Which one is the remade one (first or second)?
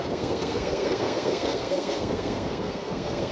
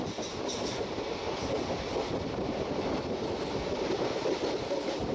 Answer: first